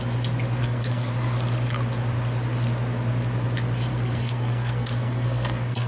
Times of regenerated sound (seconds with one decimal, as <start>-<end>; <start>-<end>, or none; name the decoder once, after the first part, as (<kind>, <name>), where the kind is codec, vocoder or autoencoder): 0.6-1.1 (codec, SNAC); 3.9-5.9